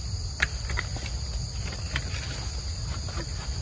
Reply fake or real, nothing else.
real